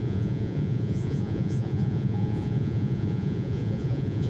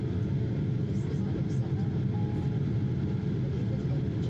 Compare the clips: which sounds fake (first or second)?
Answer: first